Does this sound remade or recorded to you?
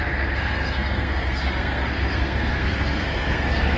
remade